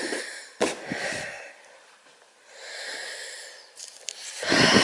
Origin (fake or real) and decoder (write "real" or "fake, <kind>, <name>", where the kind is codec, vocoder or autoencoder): fake, vocoder, BigVGAN v2